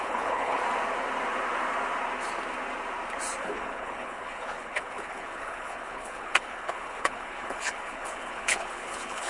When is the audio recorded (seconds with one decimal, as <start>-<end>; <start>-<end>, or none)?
0.6-3.4